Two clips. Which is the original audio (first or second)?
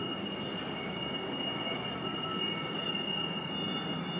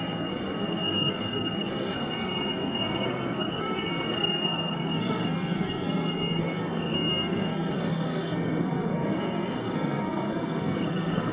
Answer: first